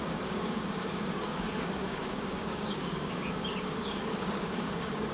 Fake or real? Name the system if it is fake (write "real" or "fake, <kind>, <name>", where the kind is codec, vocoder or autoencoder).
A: fake, codec, DAC